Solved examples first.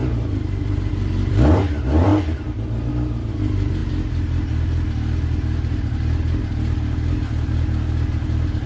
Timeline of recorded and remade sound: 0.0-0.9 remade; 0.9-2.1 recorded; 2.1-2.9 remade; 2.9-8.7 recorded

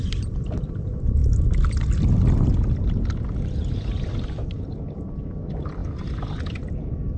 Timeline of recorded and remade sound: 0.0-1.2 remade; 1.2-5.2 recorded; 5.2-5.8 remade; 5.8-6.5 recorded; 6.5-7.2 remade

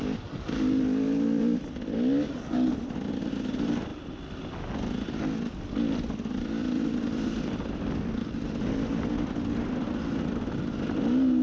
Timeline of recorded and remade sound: 0.0-11.4 recorded

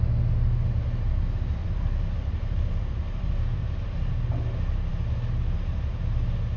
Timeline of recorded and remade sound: 0.0-1.6 recorded; 1.6-4.1 remade; 4.1-6.6 recorded

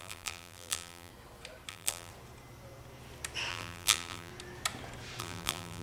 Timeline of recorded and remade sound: 0.0-1.1 remade; 1.1-1.7 recorded; 1.7-2.1 remade; 2.1-3.5 recorded; 3.5-4.3 remade; 4.3-5.2 recorded; 5.2-5.8 remade